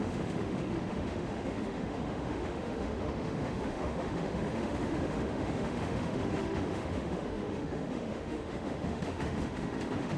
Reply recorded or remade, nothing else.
remade